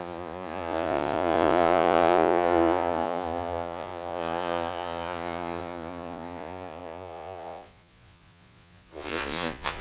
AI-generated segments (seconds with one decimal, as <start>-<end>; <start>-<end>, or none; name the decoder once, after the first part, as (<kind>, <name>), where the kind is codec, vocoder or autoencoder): 0.0-9.8 (vocoder, Vocos)